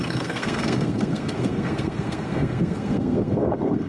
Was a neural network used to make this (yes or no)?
yes